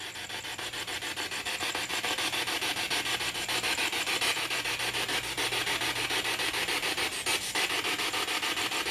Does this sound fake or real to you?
real